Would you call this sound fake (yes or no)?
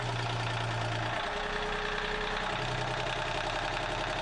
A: no